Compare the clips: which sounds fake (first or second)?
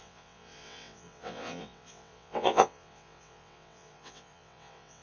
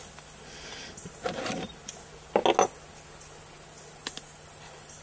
first